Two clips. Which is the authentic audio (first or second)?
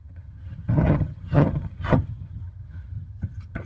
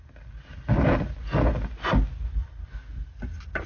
second